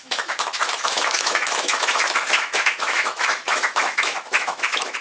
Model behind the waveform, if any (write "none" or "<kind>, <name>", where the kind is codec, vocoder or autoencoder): autoencoder, DAC-VAE